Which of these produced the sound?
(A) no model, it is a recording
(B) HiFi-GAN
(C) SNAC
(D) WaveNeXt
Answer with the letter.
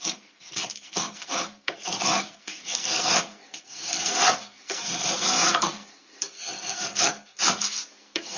C